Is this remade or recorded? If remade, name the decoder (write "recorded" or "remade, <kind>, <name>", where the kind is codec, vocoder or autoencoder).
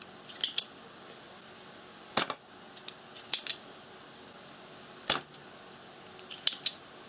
recorded